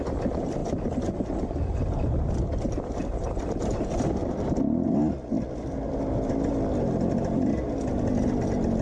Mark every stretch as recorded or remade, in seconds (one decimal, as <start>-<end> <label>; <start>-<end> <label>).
0.0-8.8 recorded